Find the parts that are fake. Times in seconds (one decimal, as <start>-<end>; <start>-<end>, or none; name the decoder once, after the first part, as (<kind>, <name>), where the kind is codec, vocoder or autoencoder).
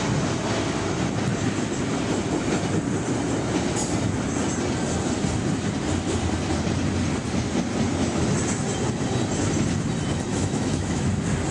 10.3-11.1 (autoencoder, DAC-VAE)